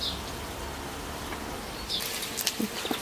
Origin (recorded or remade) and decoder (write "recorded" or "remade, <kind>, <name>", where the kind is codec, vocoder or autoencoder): recorded